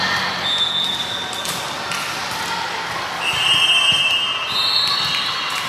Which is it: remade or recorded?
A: recorded